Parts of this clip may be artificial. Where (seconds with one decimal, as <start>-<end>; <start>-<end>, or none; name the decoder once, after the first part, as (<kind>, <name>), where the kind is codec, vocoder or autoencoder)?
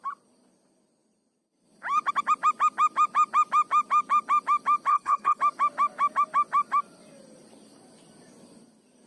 4.9-5.4 (codec, HILCodec)